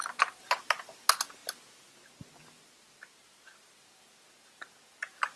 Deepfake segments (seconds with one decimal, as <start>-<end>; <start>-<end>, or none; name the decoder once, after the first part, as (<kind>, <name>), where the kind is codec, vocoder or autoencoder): none

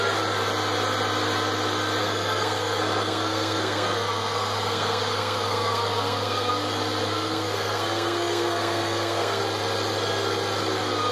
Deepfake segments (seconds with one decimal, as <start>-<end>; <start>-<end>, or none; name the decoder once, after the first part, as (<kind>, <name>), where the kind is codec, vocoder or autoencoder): 2.0-6.5 (codec, SNAC); 7.0-9.4

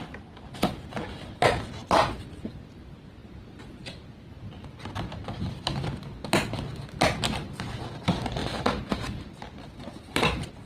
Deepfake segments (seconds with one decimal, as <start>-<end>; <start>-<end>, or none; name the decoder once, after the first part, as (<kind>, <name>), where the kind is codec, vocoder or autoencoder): none

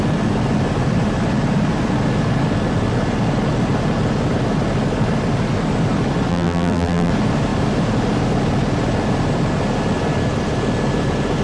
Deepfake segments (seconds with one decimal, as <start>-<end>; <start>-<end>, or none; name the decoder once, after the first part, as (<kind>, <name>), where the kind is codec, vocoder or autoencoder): 6.3-7.1 (vocoder, BigVGAN v2)

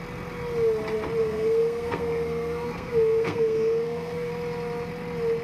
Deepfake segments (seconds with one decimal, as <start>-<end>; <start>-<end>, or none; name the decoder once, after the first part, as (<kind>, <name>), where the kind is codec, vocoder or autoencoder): 1.2-4.3 (codec, SNAC)

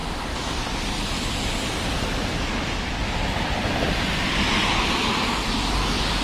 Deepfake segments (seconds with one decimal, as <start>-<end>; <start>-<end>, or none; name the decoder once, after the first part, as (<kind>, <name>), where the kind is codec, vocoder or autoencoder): none

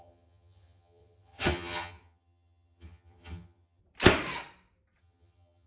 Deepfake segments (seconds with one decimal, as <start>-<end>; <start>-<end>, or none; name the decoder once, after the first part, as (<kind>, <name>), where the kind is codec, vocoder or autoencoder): 0.0-3.8 (vocoder, HiFi-GAN); 5.0-5.7

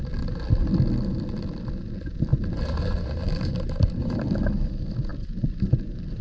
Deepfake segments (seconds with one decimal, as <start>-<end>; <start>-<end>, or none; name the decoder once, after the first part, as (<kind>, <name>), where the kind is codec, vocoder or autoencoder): 2.3-4.1 (vocoder, BigVGAN v2)